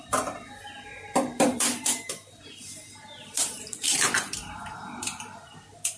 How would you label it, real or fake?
fake